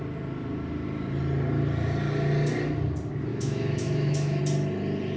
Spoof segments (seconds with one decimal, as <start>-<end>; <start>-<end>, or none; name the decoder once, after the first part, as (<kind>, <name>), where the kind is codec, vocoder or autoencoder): 3.3-4.4 (autoencoder, DAC-VAE)